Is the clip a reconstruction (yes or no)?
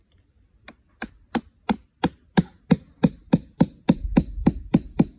no